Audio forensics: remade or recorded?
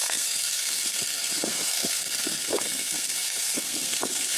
remade